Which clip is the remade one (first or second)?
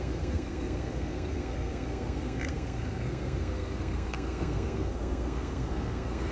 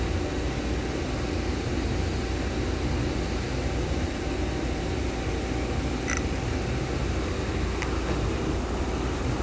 first